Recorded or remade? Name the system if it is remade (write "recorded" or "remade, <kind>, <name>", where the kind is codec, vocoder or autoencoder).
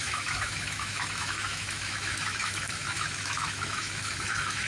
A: remade, autoencoder, DAC-VAE